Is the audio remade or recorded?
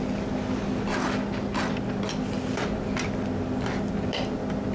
recorded